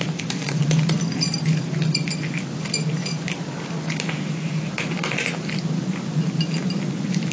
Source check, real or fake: real